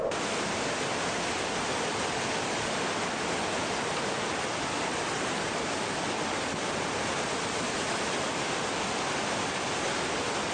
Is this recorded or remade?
recorded